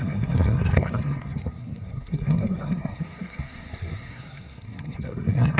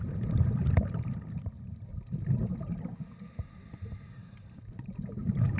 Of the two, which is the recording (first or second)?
second